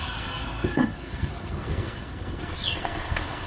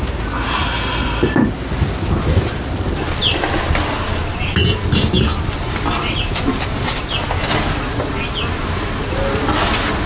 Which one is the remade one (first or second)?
first